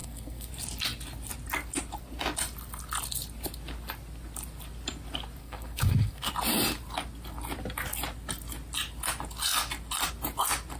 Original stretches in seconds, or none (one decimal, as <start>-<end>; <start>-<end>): 0.5-5.4; 6.3-10.8